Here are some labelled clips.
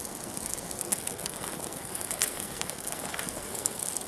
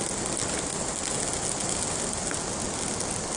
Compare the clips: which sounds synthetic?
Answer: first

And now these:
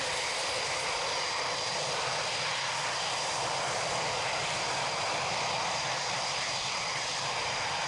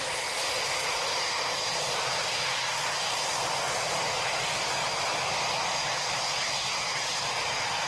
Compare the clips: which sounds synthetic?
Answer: first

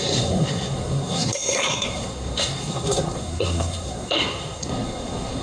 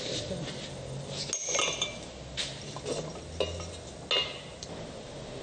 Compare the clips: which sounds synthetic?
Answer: first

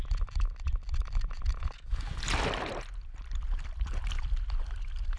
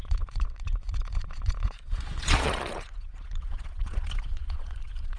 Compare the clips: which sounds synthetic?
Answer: second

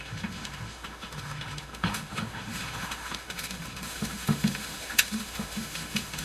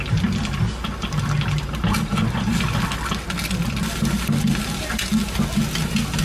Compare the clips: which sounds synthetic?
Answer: first